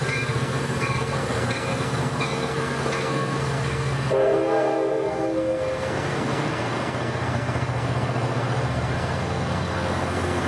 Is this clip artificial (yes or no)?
yes